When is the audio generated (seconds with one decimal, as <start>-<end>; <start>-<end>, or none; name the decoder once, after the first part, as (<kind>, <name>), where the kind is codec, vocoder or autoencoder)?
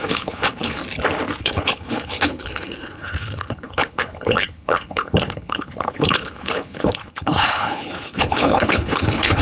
0.0-0.8 (codec, HILCodec); 1.4-9.4